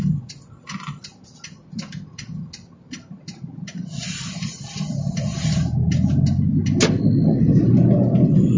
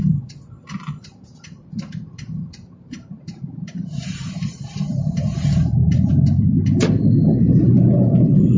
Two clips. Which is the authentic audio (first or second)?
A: first